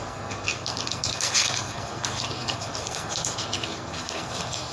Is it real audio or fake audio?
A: fake